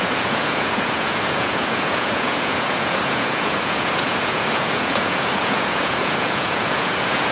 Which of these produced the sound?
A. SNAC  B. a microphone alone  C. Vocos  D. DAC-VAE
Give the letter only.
C